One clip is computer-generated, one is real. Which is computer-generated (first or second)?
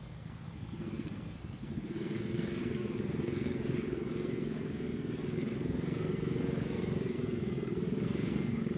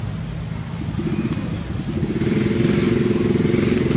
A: first